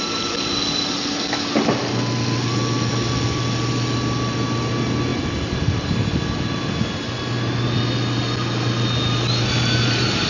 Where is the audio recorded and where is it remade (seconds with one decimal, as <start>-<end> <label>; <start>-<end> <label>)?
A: 0.0-10.3 recorded